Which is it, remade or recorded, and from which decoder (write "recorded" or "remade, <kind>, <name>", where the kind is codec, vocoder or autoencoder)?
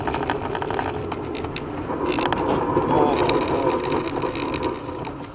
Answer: recorded